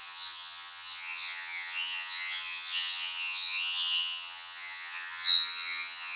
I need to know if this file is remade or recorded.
remade